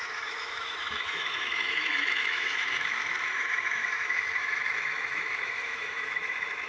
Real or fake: fake